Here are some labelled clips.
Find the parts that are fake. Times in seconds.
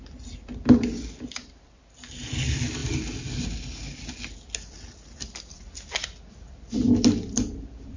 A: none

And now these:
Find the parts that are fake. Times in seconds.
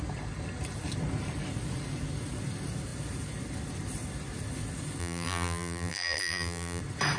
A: 5.0-6.8 (vocoder, BigVGAN v2)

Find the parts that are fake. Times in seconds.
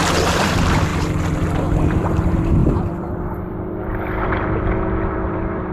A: 0.0-0.9 (vocoder, BigVGAN v2); 1.6-5.7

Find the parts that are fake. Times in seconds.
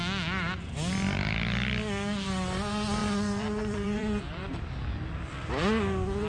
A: 3.0-4.5 (vocoder, BigVGAN v2)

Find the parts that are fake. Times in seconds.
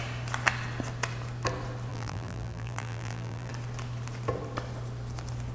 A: 1.9-3.5 (vocoder, BigVGAN v2)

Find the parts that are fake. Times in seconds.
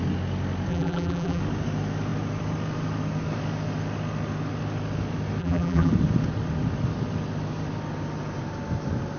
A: 0.7-1.4 (vocoder, BigVGAN v2); 5.4-5.9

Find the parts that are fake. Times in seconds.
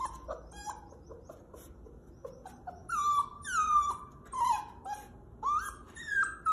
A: none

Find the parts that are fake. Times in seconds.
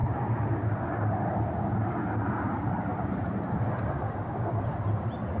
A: none